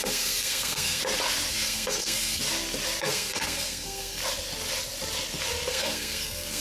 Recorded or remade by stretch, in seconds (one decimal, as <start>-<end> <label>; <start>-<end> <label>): 0.0-1.0 remade; 1.0-1.5 recorded; 1.5-2.4 remade; 2.4-3.0 recorded; 3.0-4.2 remade; 4.2-5.7 recorded; 5.7-6.6 remade